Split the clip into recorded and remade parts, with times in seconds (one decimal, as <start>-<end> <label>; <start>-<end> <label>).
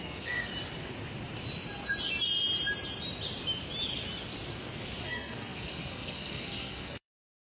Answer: 0.0-0.5 remade; 0.5-5.0 recorded; 5.0-7.5 remade